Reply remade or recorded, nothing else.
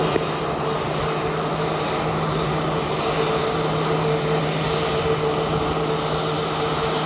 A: recorded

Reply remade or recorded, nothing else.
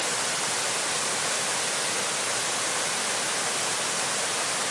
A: recorded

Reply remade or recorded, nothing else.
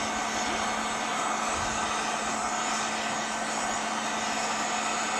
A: recorded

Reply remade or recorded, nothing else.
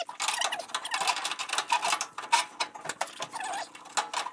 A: recorded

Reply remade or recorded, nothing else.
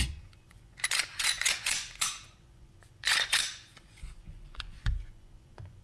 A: remade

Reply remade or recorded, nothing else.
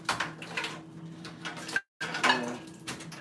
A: recorded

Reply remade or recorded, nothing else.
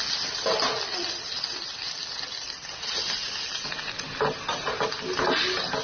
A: recorded